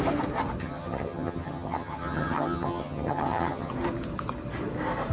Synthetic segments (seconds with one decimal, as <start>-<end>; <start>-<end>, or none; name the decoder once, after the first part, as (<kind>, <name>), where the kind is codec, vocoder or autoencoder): 0.6-3.7 (vocoder, HiFi-GAN)